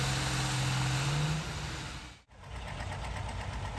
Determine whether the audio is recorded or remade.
recorded